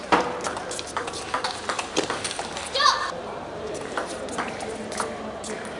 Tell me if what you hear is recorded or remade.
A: remade